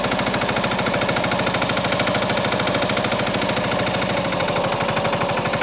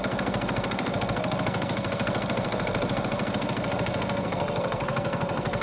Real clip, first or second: first